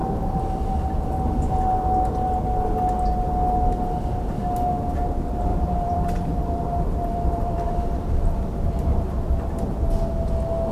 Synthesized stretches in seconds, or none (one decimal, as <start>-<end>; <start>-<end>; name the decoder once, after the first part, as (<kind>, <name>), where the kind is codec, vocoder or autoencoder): 0.0-0.7 (vocoder, BigVGAN v2); 5.5-9.0

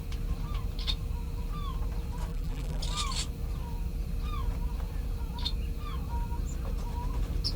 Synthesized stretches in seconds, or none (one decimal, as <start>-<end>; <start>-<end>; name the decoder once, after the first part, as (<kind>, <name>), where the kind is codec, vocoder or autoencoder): 2.3-2.8 (vocoder, BigVGAN v2)

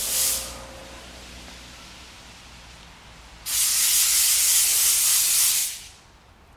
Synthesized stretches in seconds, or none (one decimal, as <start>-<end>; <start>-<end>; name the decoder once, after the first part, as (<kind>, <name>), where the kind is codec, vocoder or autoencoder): none